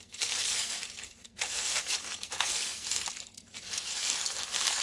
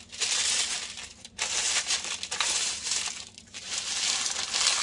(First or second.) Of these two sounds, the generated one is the first